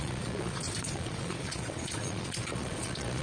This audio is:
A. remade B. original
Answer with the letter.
A